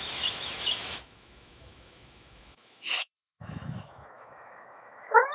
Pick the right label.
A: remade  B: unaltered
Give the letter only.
A